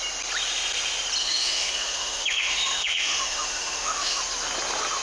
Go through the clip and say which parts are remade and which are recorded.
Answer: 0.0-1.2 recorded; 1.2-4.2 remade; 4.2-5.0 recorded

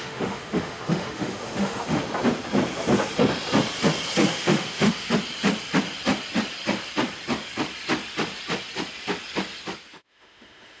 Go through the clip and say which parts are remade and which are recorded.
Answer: 0.0-2.0 remade; 2.0-4.3 recorded; 4.3-5.1 remade; 5.1-9.9 recorded; 9.9-10.8 remade

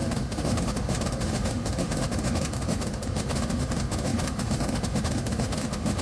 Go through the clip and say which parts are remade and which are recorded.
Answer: 0.0-6.0 remade

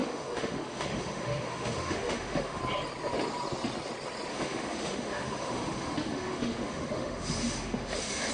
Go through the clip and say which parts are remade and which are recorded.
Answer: 0.0-2.6 remade; 2.6-4.3 recorded; 4.3-8.3 remade